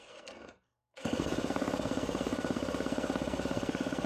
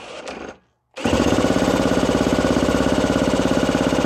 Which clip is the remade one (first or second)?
first